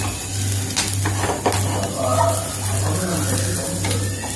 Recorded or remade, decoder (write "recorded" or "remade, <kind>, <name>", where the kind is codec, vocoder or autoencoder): recorded